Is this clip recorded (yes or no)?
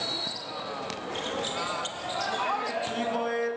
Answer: yes